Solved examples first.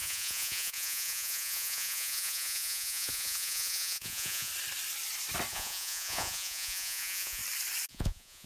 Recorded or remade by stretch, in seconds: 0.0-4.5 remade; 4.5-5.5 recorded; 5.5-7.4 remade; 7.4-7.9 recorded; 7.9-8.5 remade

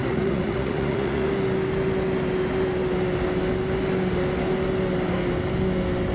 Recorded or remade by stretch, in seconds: 0.0-1.3 remade; 1.3-6.1 recorded

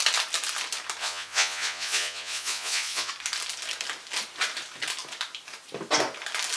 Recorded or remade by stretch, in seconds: 0.0-1.0 recorded; 1.0-3.1 remade; 3.1-6.6 recorded